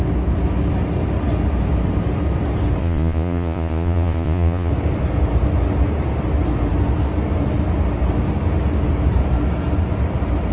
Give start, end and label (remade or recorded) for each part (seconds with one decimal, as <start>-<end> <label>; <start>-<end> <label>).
0.0-2.8 recorded; 2.8-4.7 remade; 4.7-10.5 recorded

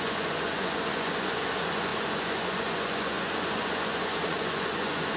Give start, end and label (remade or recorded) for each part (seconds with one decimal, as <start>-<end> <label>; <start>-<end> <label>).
0.0-5.2 remade

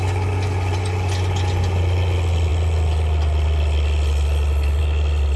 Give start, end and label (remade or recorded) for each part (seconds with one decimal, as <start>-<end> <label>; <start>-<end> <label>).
0.0-5.4 recorded

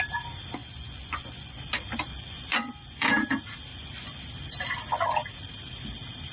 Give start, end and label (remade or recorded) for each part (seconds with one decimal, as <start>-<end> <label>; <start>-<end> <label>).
0.0-0.6 recorded; 0.6-1.6 remade; 1.6-2.1 recorded; 2.1-3.1 remade; 3.1-3.7 recorded; 3.7-4.2 remade; 4.2-6.3 recorded

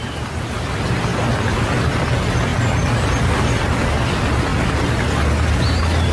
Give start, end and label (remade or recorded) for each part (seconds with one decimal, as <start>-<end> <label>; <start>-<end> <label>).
0.0-6.1 recorded